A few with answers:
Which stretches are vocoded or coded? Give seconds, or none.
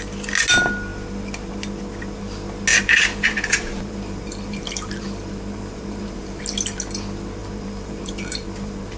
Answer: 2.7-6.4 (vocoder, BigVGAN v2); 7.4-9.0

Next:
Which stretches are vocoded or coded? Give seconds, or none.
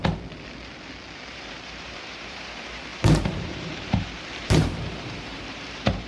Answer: 1.3-6.1 (vocoder, BigVGAN v2)